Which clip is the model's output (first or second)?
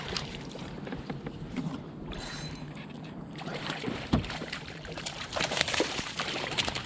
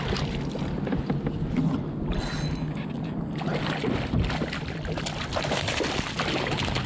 first